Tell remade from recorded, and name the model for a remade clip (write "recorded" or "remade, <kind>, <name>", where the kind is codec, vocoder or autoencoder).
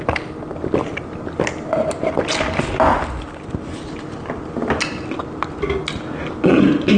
recorded